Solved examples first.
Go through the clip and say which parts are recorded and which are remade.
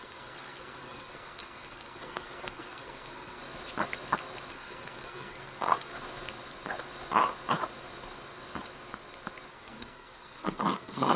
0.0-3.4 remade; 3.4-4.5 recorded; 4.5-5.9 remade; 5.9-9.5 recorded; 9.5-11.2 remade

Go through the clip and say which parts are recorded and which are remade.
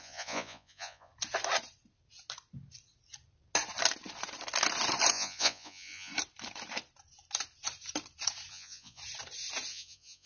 0.0-1.1 remade; 1.1-5.1 recorded; 5.1-6.1 remade; 6.1-8.5 recorded; 8.5-9.0 remade; 9.0-9.7 recorded; 9.7-10.3 remade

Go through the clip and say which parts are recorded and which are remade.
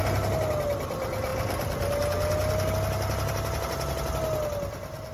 0.0-5.1 recorded